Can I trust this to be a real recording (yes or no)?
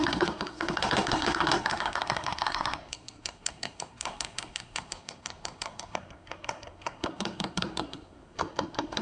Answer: no